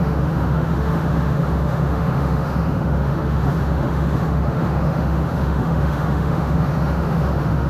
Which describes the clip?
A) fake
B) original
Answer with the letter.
A